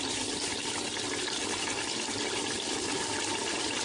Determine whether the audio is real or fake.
real